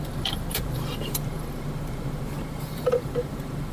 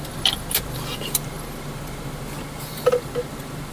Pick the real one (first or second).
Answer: second